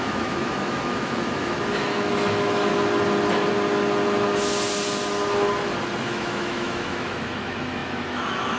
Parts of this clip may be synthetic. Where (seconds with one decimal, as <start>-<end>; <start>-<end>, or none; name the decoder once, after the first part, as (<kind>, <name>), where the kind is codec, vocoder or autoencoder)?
0.0-2.7 (autoencoder, DAC-VAE); 6.0-8.6